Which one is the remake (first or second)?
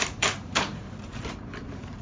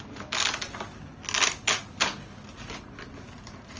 first